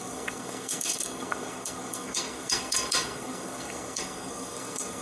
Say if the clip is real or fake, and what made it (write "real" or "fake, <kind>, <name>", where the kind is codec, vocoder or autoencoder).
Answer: fake, codec, SNAC